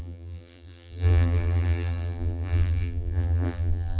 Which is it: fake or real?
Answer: fake